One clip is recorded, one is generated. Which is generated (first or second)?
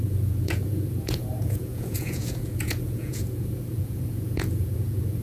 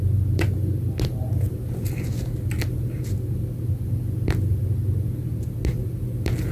first